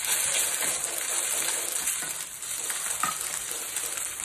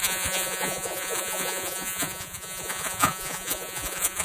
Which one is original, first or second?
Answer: first